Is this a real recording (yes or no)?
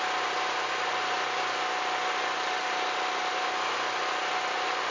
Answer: yes